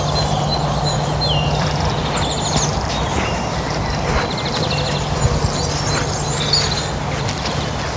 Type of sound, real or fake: real